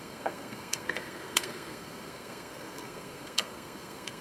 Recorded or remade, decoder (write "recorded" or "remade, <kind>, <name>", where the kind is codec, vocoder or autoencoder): remade, codec, SNAC